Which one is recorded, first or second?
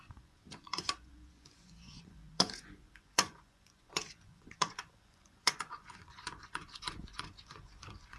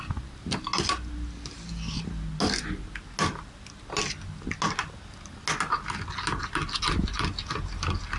second